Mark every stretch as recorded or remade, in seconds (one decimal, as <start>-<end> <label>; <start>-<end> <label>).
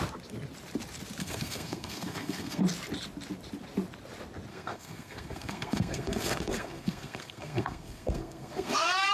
0.0-1.2 recorded; 1.2-2.6 remade; 2.6-4.5 recorded; 4.5-9.1 remade